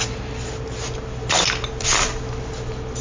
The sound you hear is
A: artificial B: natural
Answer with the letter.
B